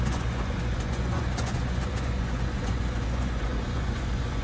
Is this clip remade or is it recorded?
remade